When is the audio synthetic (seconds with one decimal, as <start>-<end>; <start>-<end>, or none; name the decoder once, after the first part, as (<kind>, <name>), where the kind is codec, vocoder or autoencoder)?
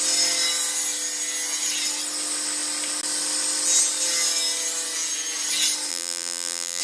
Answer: 5.9-6.8 (vocoder, BigVGAN v2)